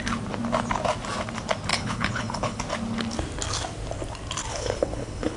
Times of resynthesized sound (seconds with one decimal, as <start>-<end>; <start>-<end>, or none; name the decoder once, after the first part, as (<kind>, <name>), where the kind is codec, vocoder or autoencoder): 1.7-2.6 (codec, HILCodec); 4.5-5.4